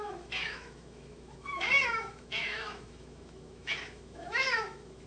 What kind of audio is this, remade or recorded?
remade